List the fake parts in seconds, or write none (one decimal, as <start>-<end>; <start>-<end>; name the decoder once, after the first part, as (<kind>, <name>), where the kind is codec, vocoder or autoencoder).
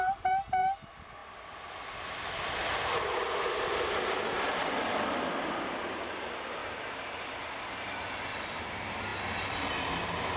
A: none